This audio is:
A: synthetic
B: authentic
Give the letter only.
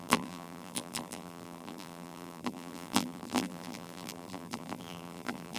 A